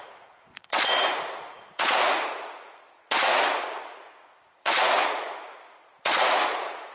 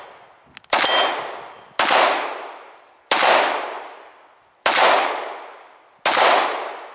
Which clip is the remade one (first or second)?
first